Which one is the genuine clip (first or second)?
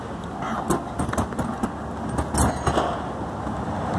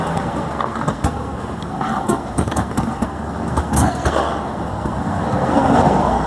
first